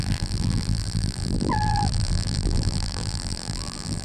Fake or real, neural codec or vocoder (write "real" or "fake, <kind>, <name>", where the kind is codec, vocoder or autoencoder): fake, vocoder, BigVGAN v2